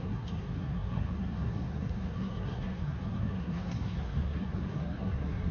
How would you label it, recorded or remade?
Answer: remade